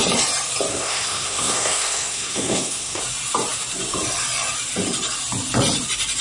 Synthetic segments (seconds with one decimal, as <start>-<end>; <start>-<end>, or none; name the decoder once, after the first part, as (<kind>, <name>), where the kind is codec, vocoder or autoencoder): 0.7-3.0 (codec, SNAC)